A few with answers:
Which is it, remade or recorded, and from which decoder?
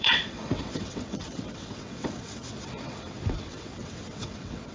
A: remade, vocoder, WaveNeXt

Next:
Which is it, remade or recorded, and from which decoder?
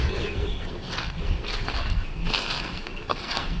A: remade, codec, SNAC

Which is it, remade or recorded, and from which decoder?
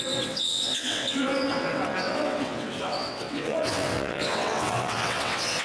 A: remade, vocoder, WaveNeXt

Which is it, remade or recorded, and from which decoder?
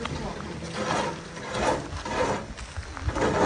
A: recorded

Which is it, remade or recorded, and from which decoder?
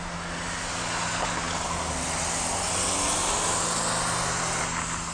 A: recorded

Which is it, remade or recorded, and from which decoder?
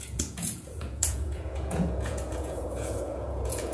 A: remade, vocoder, Vocos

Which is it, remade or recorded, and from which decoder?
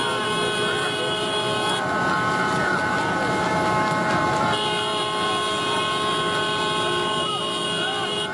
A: recorded